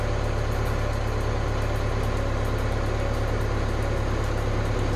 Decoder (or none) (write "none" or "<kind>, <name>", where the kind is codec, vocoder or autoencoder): none